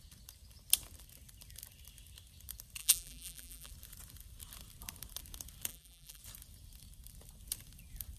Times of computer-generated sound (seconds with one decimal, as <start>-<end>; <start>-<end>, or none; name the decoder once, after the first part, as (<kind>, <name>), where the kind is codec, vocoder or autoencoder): 2.8-3.7 (vocoder, BigVGAN v2); 5.7-6.2